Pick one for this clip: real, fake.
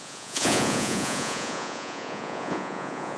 fake